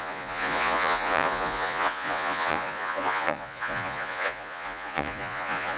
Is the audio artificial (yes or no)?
yes